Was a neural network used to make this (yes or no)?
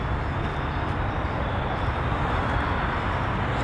no